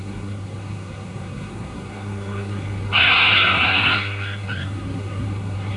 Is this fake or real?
fake